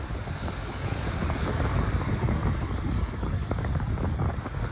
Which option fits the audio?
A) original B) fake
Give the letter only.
B